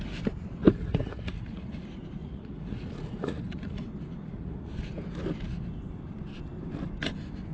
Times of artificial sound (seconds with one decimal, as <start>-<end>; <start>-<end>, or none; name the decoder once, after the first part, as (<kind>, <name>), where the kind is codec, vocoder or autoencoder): 0.6-1.7 (vocoder, Vocos); 2.2-3.8; 4.2-4.7